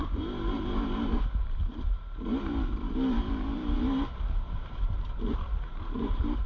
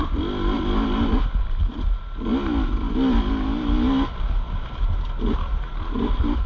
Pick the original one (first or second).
second